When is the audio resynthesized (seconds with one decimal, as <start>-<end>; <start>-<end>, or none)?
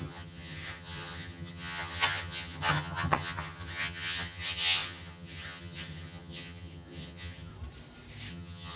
0.0-7.5; 8.3-8.8